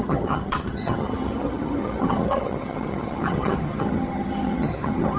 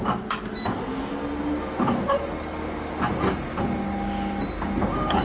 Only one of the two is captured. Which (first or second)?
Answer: second